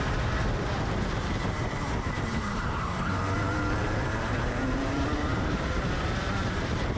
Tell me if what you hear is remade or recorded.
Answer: remade